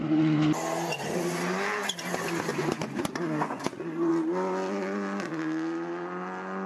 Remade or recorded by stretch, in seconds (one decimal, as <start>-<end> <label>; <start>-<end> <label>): 0.0-2.5 recorded; 2.5-4.1 remade; 4.1-6.7 recorded